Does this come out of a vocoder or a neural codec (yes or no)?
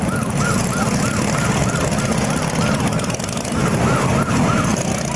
no